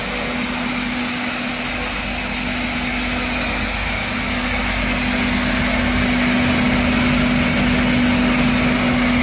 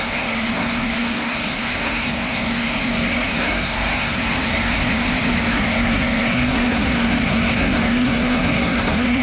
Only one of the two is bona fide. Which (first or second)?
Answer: first